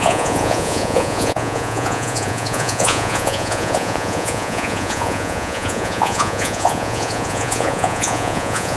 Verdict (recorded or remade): remade